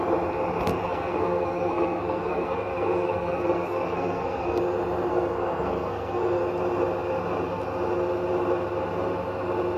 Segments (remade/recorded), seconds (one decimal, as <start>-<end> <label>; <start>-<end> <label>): 0.0-0.7 recorded; 0.7-4.6 remade; 4.6-5.1 recorded; 5.1-6.4 remade; 6.4-9.8 recorded